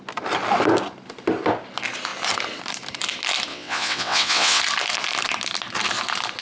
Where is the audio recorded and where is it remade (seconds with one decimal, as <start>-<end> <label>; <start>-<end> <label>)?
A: 0.0-3.5 recorded; 3.5-4.6 remade; 4.6-6.4 recorded